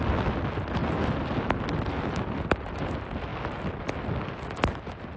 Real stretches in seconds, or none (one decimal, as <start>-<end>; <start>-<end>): 0.0-5.2